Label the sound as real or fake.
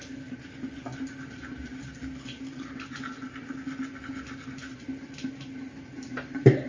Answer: real